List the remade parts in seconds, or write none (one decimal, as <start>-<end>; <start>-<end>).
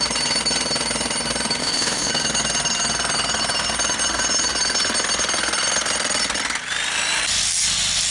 1.6-2.1